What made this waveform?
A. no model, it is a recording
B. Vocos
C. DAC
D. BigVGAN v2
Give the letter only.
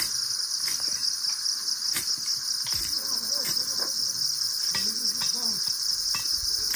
A